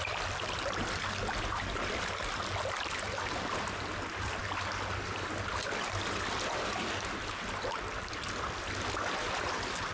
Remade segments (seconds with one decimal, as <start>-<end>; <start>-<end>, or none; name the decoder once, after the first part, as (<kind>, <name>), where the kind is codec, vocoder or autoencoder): none